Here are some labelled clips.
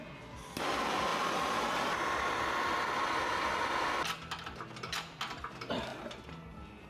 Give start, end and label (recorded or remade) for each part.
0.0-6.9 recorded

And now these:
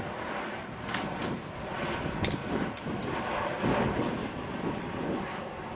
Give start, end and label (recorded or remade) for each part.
0.0-1.2 recorded; 1.2-1.7 remade; 1.7-4.2 recorded; 4.2-4.7 remade; 4.7-5.8 recorded

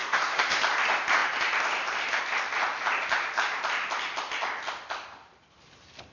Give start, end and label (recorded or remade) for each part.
0.0-0.6 remade; 0.6-6.1 recorded

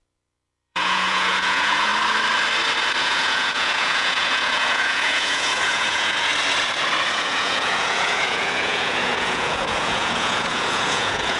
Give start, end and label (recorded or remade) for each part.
0.0-1.9 remade; 1.9-3.0 recorded; 3.0-6.3 remade; 6.3-7.1 recorded; 7.1-11.4 remade